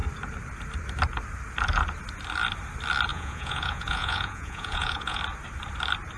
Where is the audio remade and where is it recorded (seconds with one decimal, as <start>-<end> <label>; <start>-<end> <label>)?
0.0-3.1 recorded; 3.1-5.2 remade; 5.2-6.2 recorded